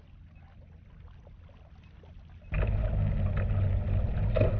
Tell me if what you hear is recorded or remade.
recorded